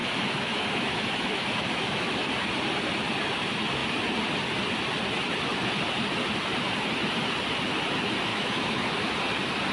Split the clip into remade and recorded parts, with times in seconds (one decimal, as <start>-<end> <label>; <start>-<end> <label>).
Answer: 0.0-2.3 remade; 2.3-8.3 recorded; 8.3-9.1 remade; 9.1-9.7 recorded